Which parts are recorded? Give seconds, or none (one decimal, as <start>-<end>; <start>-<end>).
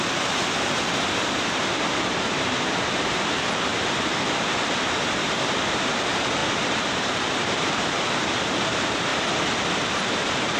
3.7-5.7; 9.1-9.7